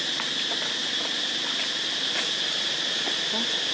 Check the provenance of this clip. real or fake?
real